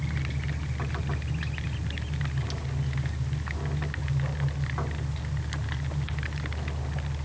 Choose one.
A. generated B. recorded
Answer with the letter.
B